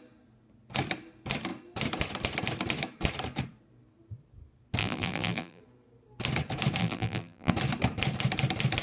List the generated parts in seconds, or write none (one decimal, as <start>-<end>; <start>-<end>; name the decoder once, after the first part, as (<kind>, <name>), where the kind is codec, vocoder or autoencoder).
4.8-5.6 (vocoder, BigVGAN v2); 6.8-7.5